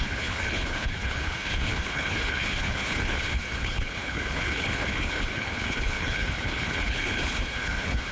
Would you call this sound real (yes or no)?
no